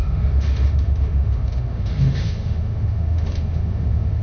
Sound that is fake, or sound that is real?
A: fake